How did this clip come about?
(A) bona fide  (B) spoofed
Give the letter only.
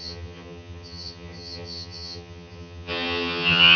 B